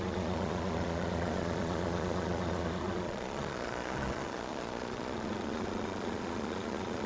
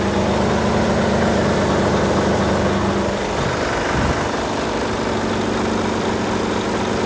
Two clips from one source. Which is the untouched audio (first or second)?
second